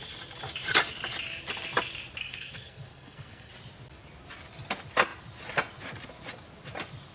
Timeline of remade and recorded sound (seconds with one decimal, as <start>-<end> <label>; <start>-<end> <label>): 0.0-2.2 recorded; 2.2-3.5 remade; 3.5-7.1 recorded